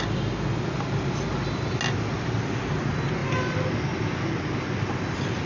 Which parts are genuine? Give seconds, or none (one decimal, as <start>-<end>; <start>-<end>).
0.0-5.5

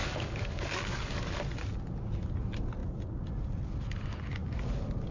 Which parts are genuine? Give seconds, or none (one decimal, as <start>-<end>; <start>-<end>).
1.4-5.1

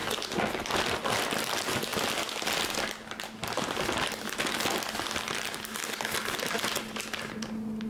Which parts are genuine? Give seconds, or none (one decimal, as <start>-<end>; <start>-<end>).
0.0-7.9

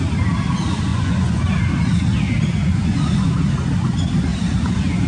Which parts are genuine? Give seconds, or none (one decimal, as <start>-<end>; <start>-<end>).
0.0-0.9; 1.4-2.6; 3.3-5.1